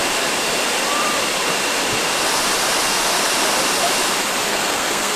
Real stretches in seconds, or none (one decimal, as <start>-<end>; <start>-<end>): 0.0-4.5